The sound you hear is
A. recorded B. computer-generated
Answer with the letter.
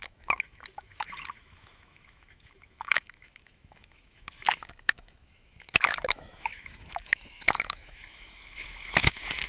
B